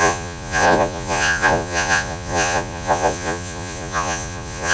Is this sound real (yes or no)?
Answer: no